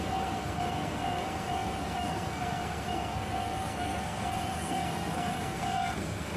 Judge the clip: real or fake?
fake